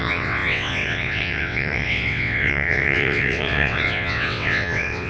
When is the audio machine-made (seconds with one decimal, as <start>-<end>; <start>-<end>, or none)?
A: 0.0-5.1